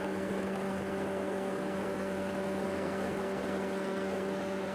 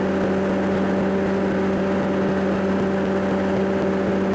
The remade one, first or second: first